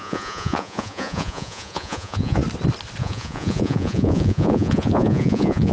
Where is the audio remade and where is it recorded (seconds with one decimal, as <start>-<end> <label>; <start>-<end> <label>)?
0.0-2.4 remade; 2.4-3.0 recorded; 3.0-5.7 remade